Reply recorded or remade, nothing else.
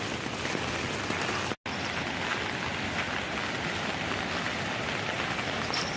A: recorded